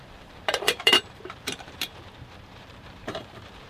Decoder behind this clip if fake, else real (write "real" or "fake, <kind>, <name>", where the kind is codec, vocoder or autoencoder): fake, vocoder, BigVGAN v2